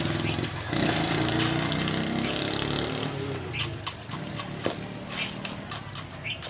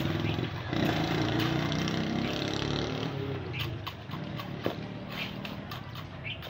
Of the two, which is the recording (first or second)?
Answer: first